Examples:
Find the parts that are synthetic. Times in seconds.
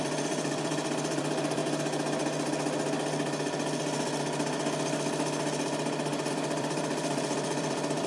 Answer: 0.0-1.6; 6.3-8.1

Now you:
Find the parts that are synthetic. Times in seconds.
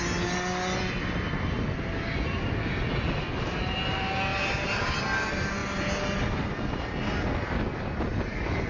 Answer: none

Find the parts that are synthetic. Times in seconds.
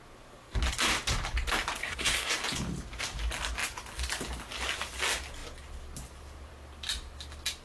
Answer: 1.8-2.3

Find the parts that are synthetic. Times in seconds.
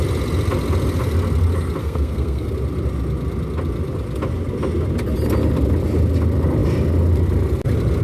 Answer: 1.8-2.5